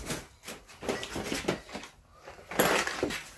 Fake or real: real